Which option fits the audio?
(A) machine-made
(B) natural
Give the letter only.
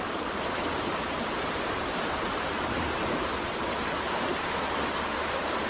B